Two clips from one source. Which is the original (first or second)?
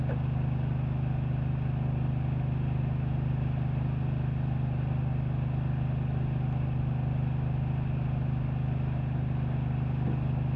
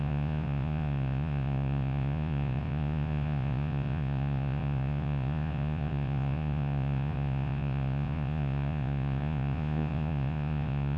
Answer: first